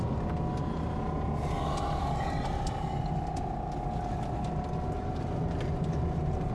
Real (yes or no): yes